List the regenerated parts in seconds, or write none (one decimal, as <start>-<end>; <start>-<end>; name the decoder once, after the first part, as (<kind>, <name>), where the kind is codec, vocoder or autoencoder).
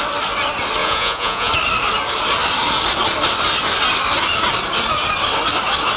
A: 0.8-1.5 (vocoder, Vocos)